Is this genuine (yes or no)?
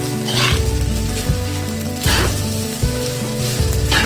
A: yes